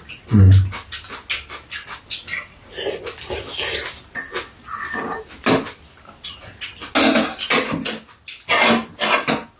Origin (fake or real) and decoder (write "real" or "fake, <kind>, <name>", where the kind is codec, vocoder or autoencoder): real